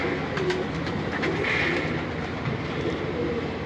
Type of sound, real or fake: real